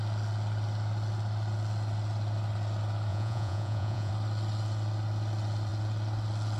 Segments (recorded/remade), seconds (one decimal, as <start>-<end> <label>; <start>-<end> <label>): 0.0-3.1 recorded; 3.1-4.1 remade; 4.1-6.6 recorded